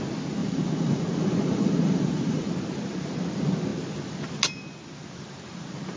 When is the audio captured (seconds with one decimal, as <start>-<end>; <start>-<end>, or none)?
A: 0.0-0.4; 2.5-6.0